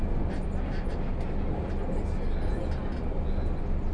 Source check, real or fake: real